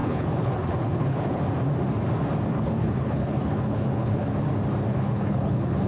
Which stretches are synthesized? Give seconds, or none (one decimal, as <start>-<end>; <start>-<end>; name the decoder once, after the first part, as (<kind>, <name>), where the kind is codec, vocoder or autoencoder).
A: 0.0-1.4 (codec, HILCodec); 2.5-4.3; 4.9-5.9

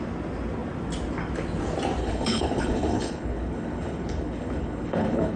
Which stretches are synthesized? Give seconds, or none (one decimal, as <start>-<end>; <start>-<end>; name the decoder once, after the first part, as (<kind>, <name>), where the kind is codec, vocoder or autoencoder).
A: 2.0-5.4 (codec, HILCodec)

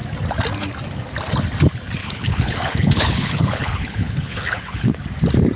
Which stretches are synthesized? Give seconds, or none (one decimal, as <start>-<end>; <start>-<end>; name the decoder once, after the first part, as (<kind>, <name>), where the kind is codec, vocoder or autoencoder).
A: 2.0-5.0 (codec, HILCodec)

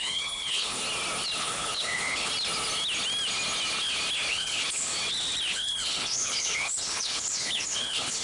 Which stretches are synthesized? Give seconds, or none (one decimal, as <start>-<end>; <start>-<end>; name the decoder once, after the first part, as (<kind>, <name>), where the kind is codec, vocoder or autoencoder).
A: 0.0-0.8 (codec, HILCodec); 1.4-2.3; 4.3-4.9; 5.5-8.2

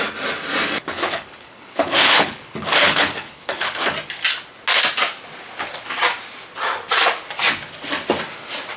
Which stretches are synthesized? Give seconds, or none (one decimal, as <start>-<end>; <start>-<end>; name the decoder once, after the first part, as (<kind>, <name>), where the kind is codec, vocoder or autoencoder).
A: 0.8-3.9 (codec, HILCodec)

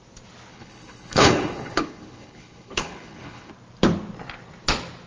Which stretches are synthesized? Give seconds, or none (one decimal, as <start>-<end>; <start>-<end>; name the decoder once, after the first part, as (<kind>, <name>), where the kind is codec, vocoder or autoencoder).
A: 0.5-3.5 (codec, HILCodec)

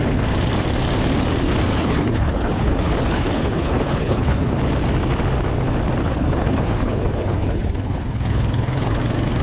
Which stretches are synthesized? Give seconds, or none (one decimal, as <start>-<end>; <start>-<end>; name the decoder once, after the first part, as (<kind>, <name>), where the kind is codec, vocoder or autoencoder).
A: 1.7-4.6 (codec, HILCodec); 6.0-9.0